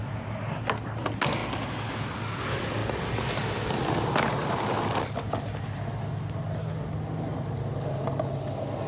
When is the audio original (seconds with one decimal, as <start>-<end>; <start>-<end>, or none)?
0.0-8.9